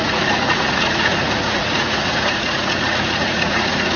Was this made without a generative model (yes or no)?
no